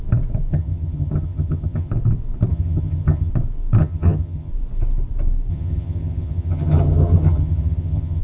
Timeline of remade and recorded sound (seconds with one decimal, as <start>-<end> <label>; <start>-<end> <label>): 0.0-0.5 recorded; 0.5-1.9 remade; 1.9-2.5 recorded; 2.5-3.3 remade; 3.3-3.8 recorded; 3.8-4.5 remade; 4.5-5.5 recorded; 5.5-8.2 remade